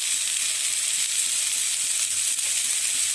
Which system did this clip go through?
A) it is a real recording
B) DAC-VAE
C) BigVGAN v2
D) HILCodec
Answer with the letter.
A